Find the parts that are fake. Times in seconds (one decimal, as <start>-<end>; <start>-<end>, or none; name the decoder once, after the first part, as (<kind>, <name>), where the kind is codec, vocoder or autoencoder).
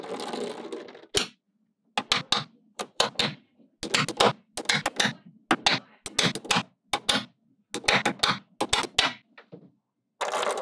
2.7-3.2 (vocoder, BigVGAN v2)